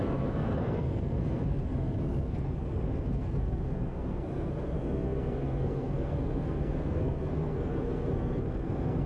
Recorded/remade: remade